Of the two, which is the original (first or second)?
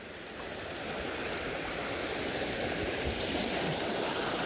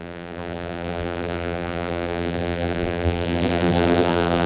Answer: first